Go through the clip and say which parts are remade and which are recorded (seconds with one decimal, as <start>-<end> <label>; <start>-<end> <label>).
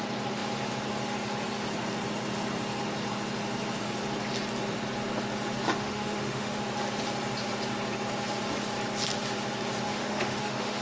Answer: 0.0-5.8 recorded; 5.8-6.6 remade; 6.6-9.9 recorded; 9.9-10.8 remade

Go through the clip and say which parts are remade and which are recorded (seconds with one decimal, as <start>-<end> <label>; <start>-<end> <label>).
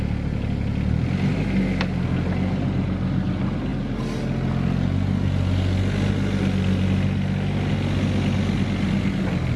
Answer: 0.0-9.6 recorded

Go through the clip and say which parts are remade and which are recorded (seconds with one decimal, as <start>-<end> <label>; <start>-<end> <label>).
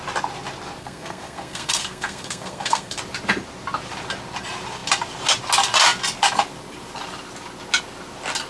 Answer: 0.0-0.8 recorded; 0.8-3.0 remade; 3.0-8.5 recorded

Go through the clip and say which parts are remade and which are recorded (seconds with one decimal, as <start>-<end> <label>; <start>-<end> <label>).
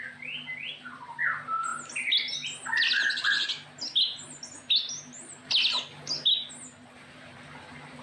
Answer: 0.0-8.0 recorded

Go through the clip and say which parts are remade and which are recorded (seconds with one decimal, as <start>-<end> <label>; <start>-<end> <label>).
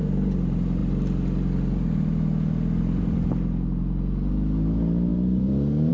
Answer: 0.0-5.9 recorded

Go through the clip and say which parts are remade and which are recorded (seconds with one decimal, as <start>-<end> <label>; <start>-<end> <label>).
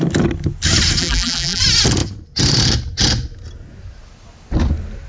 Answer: 0.0-1.0 recorded; 1.0-1.6 remade; 1.6-5.1 recorded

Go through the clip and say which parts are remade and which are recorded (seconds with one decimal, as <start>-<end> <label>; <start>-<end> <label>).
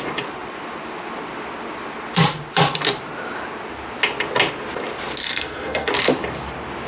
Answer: 0.0-5.2 recorded; 5.2-5.9 remade; 5.9-6.9 recorded